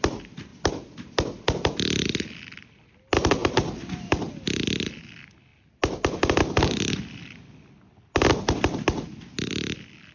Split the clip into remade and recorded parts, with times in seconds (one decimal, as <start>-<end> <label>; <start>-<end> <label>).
0.0-10.1 recorded